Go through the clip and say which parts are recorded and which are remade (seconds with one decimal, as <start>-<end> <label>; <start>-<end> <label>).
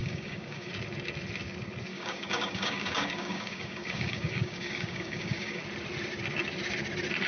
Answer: 0.0-0.7 remade; 0.7-1.9 recorded; 1.9-5.6 remade; 5.6-7.3 recorded